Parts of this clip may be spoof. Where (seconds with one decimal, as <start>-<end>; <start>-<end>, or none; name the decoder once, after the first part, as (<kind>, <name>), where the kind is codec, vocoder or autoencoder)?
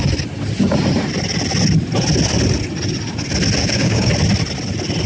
3.6-4.1 (codec, DAC)